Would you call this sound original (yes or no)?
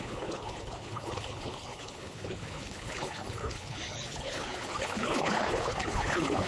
no